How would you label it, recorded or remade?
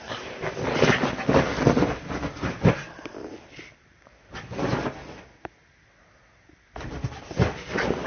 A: recorded